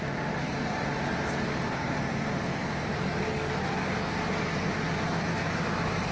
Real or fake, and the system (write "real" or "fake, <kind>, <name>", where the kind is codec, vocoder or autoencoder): real